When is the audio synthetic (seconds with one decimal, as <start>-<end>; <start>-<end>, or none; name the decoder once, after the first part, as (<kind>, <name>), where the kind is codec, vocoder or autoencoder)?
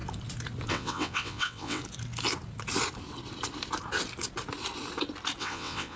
0.7-1.8 (vocoder, WaveNeXt); 5.4-6.0